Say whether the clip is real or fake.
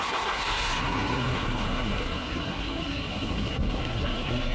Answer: fake